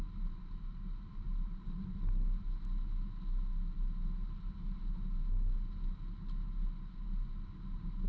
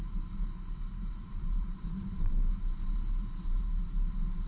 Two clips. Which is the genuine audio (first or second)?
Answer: first